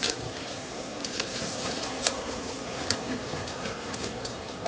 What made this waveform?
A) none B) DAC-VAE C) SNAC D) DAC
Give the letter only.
C